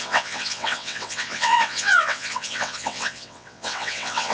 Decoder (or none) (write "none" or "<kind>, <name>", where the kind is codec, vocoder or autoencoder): vocoder, WaveNeXt